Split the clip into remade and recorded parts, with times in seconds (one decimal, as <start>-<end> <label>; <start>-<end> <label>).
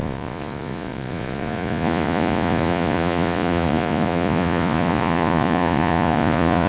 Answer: 0.0-6.7 remade